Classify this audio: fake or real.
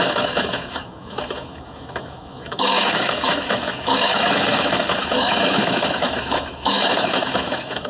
fake